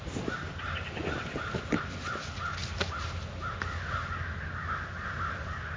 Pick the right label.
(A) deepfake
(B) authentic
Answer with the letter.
B